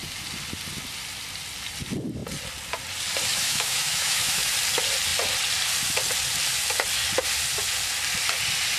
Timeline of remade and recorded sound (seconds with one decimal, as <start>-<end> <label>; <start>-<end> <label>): 0.0-3.3 recorded; 3.3-4.5 remade; 4.5-8.8 recorded